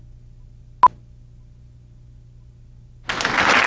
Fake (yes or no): no